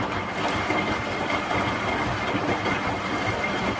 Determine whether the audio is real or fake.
real